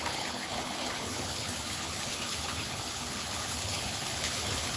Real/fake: fake